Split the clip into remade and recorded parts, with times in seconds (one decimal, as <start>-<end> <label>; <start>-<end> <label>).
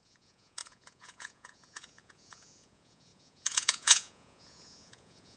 0.0-5.4 remade